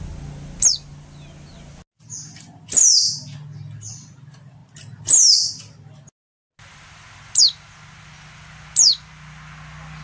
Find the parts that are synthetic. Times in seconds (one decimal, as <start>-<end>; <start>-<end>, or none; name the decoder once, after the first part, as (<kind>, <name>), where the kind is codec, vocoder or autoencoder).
none